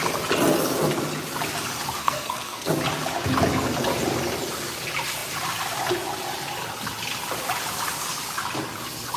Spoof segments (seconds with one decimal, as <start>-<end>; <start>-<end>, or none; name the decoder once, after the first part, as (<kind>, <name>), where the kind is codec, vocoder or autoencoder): 2.0-2.7 (codec, SNAC)